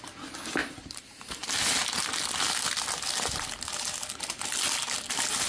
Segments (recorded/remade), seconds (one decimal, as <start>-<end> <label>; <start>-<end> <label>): 0.0-0.6 recorded; 0.6-1.5 remade; 1.5-5.5 recorded